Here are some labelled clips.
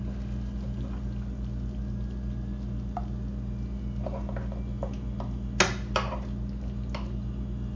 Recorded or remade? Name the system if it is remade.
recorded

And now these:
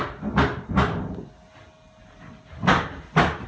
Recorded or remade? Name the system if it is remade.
recorded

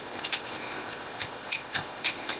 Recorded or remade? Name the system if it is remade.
remade, codec, ZipCodec